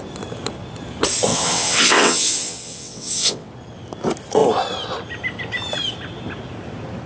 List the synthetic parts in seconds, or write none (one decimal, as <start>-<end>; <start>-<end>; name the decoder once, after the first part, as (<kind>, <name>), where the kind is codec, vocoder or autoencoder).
1.3-3.5 (vocoder, WaveNeXt)

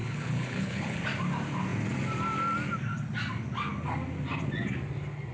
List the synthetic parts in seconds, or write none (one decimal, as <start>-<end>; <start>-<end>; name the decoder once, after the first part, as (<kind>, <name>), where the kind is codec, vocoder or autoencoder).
0.0-1.0 (codec, HILCodec)